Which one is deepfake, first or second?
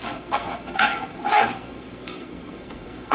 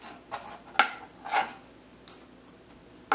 first